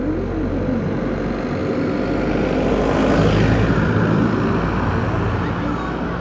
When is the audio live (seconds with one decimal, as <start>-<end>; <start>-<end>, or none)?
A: 0.0-6.2